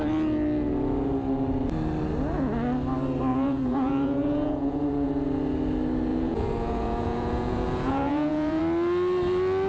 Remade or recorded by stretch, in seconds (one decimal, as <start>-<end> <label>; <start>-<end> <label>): 0.0-3.3 recorded; 3.3-5.1 remade; 5.1-6.1 recorded; 6.1-8.6 remade; 8.6-9.7 recorded